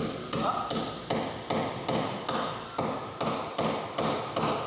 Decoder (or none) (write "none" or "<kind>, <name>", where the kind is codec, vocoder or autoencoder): none